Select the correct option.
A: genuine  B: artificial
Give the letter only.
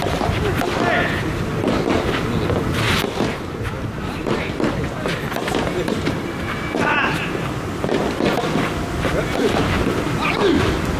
A